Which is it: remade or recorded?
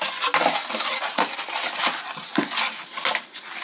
recorded